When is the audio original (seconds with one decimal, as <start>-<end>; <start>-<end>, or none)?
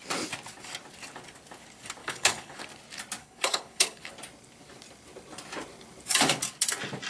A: 0.0-2.0; 2.6-3.2; 4.1-7.1